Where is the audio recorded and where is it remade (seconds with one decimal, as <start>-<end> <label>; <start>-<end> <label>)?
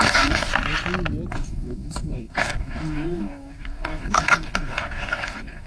0.0-0.5 remade; 0.5-1.3 recorded; 1.3-5.7 remade